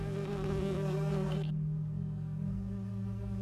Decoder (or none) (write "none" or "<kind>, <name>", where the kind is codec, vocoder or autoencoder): codec, SNAC